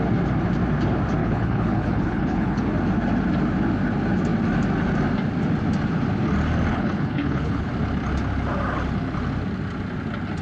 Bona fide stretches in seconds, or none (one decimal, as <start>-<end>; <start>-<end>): 0.0-1.2; 2.6-6.7; 7.7-10.4